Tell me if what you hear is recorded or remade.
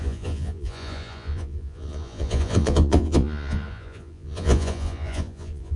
remade